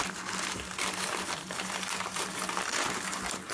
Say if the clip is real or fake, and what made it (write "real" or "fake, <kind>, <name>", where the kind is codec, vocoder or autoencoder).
real